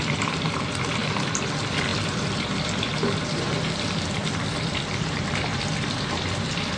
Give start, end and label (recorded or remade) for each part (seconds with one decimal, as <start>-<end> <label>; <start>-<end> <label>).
0.0-1.0 remade; 1.0-1.5 recorded; 1.5-6.8 remade